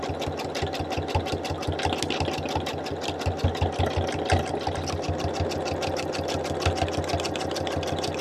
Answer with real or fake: real